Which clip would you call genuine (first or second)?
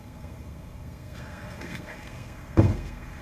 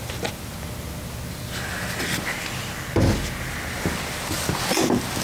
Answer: second